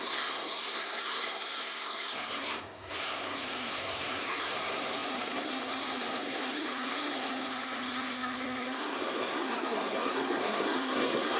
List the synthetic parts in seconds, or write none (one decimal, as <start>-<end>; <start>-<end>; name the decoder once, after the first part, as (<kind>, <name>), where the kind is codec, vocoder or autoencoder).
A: 0.0-11.4 (codec, SNAC)